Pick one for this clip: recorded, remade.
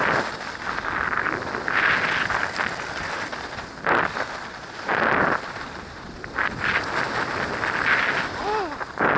recorded